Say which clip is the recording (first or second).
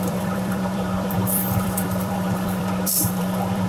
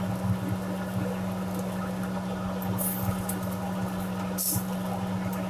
second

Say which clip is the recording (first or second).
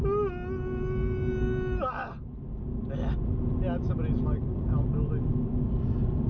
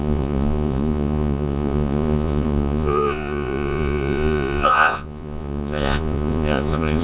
first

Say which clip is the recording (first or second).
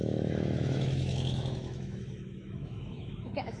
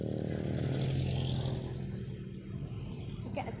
second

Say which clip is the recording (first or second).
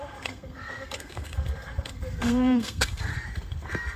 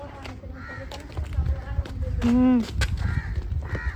second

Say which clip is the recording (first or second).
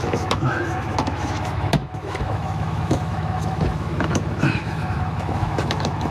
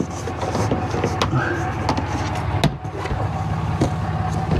second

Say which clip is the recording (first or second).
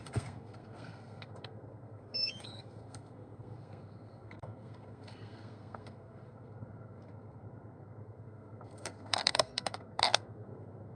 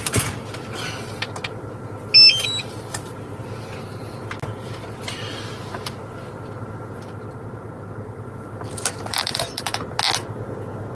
second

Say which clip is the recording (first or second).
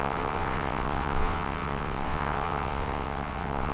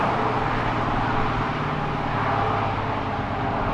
second